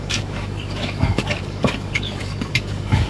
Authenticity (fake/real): fake